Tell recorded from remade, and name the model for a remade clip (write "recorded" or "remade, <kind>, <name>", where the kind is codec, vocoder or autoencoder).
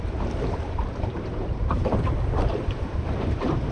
remade, vocoder, BigVGAN v2